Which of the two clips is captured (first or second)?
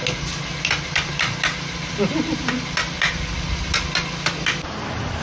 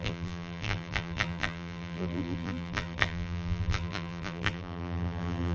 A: first